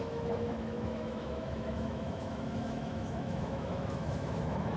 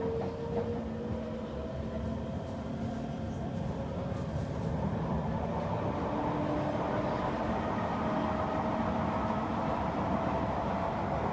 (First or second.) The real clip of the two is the second